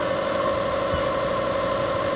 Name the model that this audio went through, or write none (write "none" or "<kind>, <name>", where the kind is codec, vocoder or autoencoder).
none